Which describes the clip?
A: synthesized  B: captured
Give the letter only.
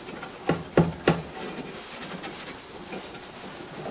B